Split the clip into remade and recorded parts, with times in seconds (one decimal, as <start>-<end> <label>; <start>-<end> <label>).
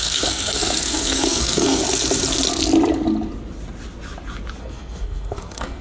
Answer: 0.0-1.8 remade; 1.8-4.6 recorded; 4.6-5.8 remade